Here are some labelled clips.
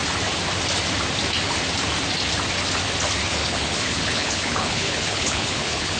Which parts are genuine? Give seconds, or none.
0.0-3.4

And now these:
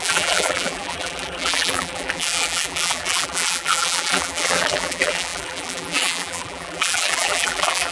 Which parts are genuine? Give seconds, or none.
none

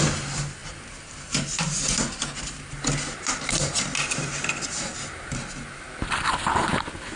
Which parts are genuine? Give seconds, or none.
0.0-7.2

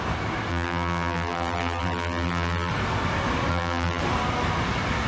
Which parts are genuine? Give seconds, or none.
0.0-0.5; 2.7-3.5; 4.0-5.1

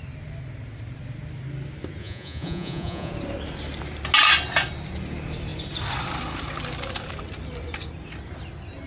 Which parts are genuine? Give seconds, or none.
0.0-2.0; 3.1-8.9

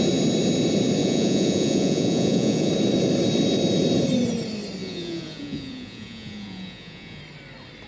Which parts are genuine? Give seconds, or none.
0.0-1.0; 2.7-4.8; 7.2-7.9

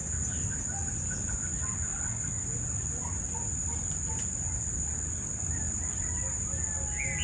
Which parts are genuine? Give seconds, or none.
0.0-7.2